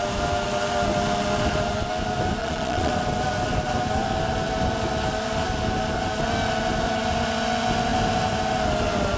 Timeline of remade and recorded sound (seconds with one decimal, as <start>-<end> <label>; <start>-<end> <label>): 0.0-2.4 recorded; 2.4-2.9 remade; 2.9-9.2 recorded